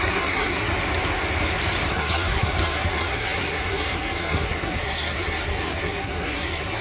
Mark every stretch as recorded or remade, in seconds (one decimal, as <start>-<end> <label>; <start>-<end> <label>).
0.0-0.7 remade; 0.7-1.9 recorded; 1.9-6.8 remade